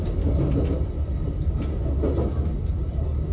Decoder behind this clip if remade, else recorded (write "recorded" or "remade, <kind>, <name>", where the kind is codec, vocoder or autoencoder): recorded